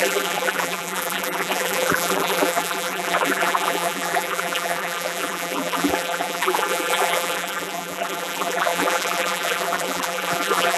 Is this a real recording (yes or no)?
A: no